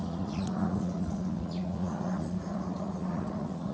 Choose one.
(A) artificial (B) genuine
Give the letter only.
A